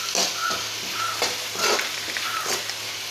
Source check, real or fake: real